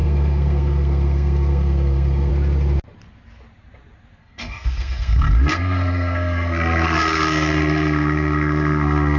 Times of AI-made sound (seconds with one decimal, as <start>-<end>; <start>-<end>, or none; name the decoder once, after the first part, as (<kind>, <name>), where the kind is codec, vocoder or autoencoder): 0.0-2.3 (codec, SNAC); 4.2-9.2

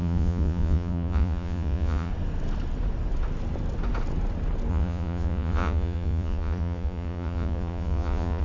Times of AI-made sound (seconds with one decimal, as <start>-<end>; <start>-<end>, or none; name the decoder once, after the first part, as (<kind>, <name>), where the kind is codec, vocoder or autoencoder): 0.0-2.1 (vocoder, Vocos); 4.7-8.4

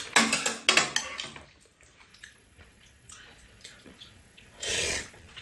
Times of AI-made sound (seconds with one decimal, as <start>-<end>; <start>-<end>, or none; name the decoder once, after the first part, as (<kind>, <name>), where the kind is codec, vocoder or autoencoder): 2.1-5.4 (vocoder, Vocos)